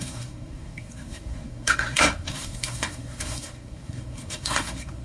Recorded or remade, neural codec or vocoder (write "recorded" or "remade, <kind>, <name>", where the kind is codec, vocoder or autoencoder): remade, codec, SNAC